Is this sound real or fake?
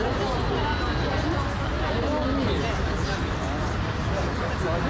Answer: real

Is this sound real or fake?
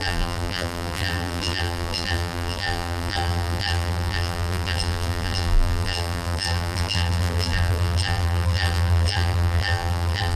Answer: fake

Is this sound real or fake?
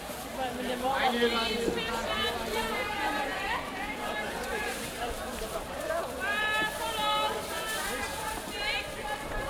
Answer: fake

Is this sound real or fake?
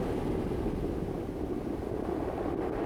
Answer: real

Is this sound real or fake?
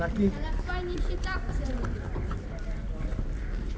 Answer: real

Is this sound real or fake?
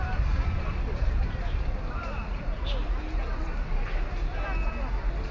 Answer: real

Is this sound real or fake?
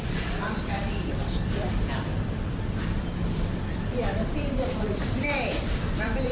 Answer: fake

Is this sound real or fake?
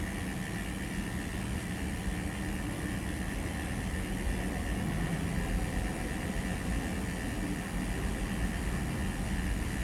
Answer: real